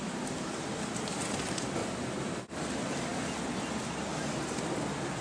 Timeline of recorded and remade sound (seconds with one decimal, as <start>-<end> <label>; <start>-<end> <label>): 0.0-1.8 recorded; 1.8-2.4 remade; 2.4-5.2 recorded